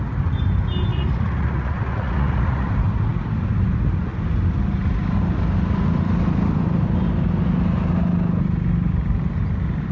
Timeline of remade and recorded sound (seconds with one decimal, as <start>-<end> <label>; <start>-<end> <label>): 0.0-0.9 recorded; 0.9-2.7 remade; 2.7-9.9 recorded